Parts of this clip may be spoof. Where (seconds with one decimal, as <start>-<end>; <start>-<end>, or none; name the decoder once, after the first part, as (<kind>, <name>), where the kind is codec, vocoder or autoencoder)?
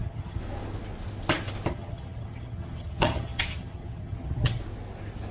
0.0-0.4 (vocoder, HiFi-GAN); 1.7-4.6